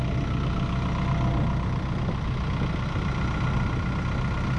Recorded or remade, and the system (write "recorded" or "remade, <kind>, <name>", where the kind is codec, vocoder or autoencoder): recorded